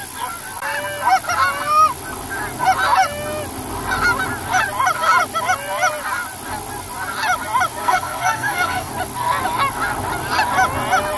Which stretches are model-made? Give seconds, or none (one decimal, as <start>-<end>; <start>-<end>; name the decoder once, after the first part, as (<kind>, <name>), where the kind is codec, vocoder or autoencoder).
7.8-8.9 (codec, SNAC)